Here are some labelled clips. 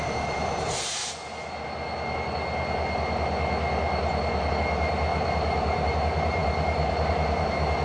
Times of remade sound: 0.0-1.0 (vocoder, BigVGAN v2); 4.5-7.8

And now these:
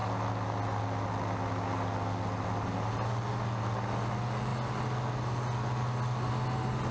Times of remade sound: none

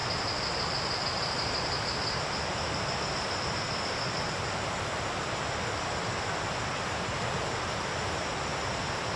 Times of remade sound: none

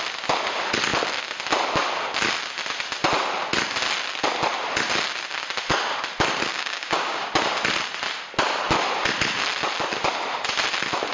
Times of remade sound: 6.5-7.3 (codec, DAC)

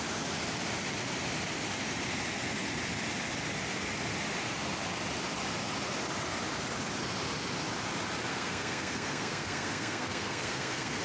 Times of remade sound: 8.3-11.0 (codec, SNAC)

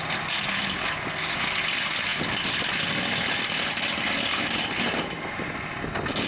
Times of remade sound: 2.1-3.8 (vocoder, BigVGAN v2)